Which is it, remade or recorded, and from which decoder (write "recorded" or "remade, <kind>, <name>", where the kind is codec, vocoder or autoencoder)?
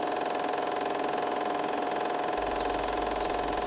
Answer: recorded